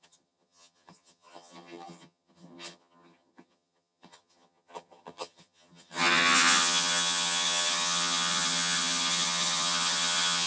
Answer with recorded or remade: remade